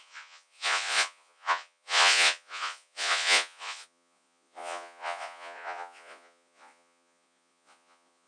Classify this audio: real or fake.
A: fake